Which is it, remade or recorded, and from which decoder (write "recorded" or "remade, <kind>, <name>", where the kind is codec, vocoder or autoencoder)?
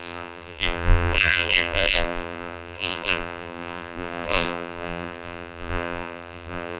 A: remade, vocoder, BigVGAN v2